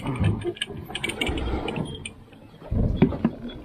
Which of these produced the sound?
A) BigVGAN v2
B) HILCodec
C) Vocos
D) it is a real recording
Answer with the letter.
D